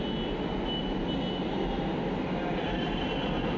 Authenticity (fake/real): real